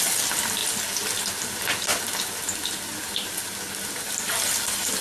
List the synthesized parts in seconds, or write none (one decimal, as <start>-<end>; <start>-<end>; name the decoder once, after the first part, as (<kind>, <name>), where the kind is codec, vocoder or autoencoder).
none